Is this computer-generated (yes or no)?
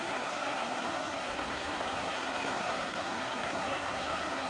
yes